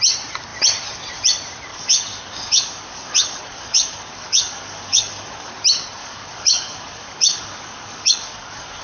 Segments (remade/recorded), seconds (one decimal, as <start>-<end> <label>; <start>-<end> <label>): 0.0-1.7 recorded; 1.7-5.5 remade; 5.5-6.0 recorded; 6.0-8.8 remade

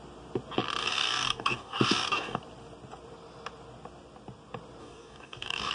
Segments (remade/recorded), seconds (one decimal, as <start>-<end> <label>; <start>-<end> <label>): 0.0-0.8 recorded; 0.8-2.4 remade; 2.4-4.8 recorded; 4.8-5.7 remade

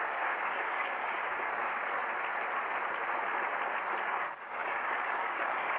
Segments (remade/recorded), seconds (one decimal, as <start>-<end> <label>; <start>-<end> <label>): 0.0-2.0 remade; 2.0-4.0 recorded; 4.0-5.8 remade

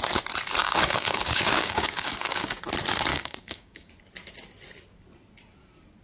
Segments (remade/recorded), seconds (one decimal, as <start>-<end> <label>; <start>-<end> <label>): 0.0-0.6 recorded; 0.6-2.6 remade; 2.6-3.1 recorded; 3.1-3.9 remade; 3.9-6.0 recorded

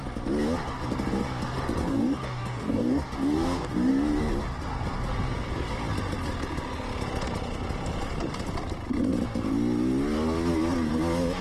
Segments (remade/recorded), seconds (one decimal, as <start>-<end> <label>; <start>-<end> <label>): 0.0-1.8 recorded; 1.8-3.9 remade; 3.9-11.4 recorded

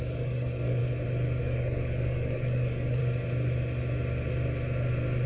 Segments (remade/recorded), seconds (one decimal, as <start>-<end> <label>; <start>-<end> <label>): 0.0-0.8 remade; 0.8-1.4 recorded; 1.4-3.0 remade; 3.0-5.3 recorded

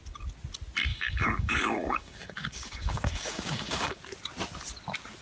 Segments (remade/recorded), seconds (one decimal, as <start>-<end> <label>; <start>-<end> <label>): 0.0-0.9 recorded; 0.9-4.0 remade; 4.0-5.2 recorded

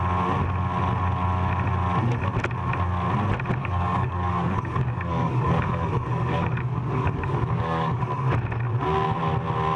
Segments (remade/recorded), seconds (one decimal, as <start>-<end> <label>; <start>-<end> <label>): 0.0-3.6 recorded; 3.6-8.0 remade; 8.0-9.8 recorded